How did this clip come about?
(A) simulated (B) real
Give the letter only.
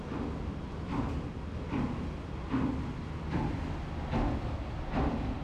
B